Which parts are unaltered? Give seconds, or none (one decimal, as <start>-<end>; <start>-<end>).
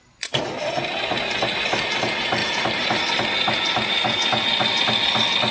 0.0-2.4; 2.9-5.5